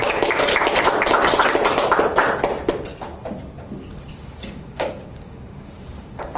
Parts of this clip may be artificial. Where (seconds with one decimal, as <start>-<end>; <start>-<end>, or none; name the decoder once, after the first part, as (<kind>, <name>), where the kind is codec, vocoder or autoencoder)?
0.0-0.5 (codec, DAC); 4.3-6.4